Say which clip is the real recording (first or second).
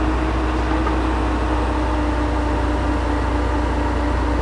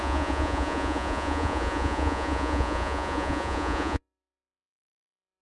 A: first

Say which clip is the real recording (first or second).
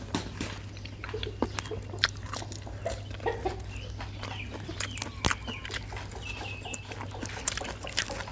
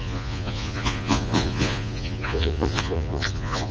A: first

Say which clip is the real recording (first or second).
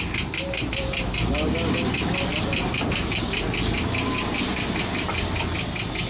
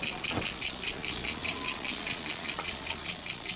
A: first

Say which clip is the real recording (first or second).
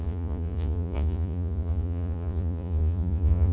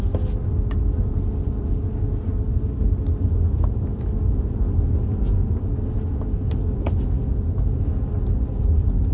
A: second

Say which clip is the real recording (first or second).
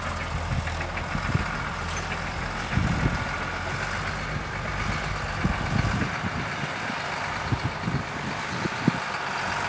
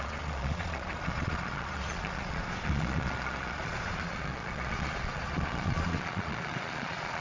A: first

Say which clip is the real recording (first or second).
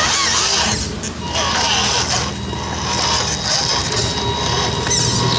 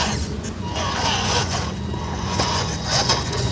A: first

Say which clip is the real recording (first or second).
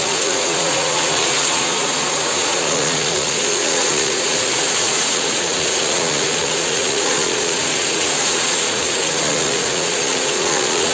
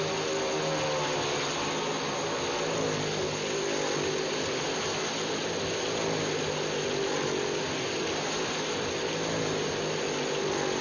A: second